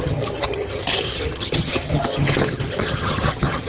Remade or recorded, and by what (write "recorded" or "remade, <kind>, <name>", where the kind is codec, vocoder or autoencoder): remade, vocoder, HiFi-GAN